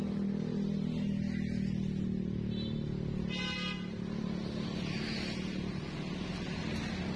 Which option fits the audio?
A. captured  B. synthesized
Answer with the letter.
A